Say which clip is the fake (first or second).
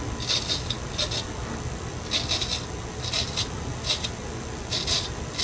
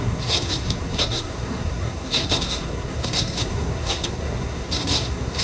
second